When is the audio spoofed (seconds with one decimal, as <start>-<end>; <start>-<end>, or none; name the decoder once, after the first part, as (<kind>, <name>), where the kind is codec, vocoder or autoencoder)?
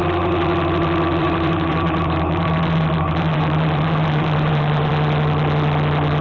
1.2-4.9 (vocoder, BigVGAN v2)